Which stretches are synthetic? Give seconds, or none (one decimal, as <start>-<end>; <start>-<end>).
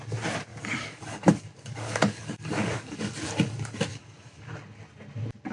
0.5-3.1; 3.9-4.5